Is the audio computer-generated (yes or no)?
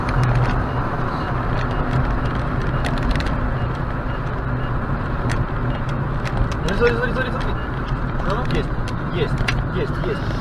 no